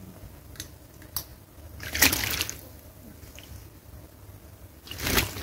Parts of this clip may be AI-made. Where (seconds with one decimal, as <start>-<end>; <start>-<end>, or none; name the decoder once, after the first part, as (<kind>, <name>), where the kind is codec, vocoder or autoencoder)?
none